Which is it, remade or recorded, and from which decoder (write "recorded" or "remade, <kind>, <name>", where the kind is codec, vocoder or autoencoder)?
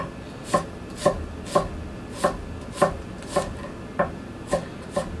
recorded